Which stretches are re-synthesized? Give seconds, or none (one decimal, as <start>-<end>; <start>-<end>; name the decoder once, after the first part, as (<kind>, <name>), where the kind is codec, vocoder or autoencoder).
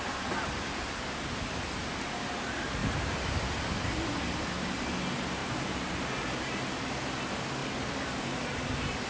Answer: 2.8-3.5 (vocoder, BigVGAN v2); 5.4-7.0